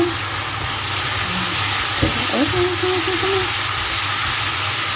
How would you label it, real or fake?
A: real